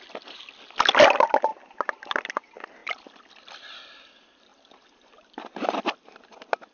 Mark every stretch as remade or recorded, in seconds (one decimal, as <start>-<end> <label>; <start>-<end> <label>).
0.0-6.7 recorded